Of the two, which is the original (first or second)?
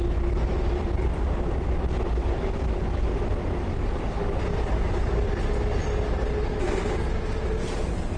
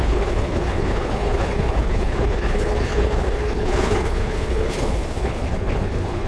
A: first